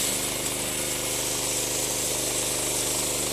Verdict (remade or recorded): recorded